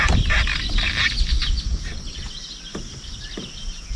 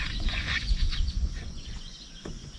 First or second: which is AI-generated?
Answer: second